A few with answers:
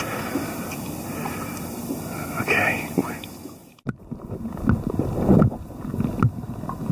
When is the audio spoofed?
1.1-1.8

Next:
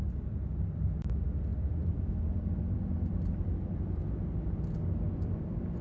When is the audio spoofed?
0.0-4.0; 4.9-5.8

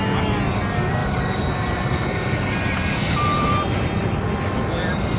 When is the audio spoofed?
1.0-3.5

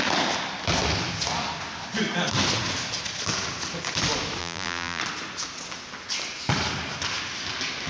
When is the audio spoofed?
4.4-5.0